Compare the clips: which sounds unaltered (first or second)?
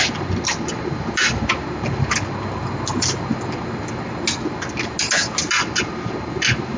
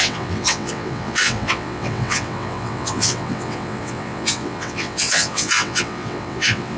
first